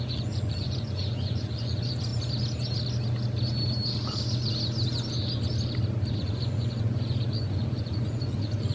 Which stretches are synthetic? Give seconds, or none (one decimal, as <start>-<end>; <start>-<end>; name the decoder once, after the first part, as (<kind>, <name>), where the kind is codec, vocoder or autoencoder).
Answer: 0.0-2.1 (vocoder, Vocos); 6.1-8.7